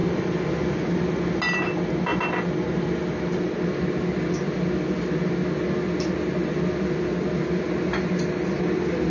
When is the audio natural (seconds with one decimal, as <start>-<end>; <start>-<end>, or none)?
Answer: 0.0-9.1